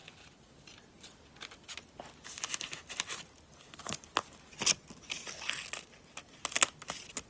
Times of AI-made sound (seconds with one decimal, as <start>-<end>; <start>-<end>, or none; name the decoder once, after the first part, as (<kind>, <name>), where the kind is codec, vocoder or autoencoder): none